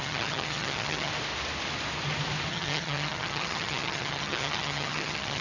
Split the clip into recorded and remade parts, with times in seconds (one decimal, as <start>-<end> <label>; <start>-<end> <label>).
0.0-1.1 remade; 1.1-2.5 recorded; 2.5-5.4 remade